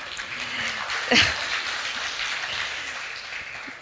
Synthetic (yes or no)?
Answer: yes